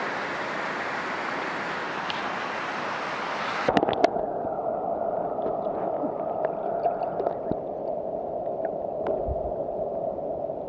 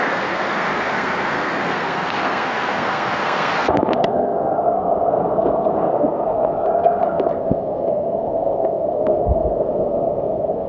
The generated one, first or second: second